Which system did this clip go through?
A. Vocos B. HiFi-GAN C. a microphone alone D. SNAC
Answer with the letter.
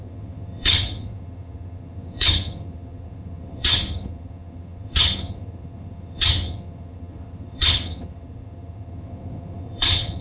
B